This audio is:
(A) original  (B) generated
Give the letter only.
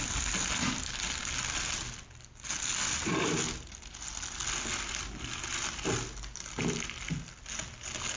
A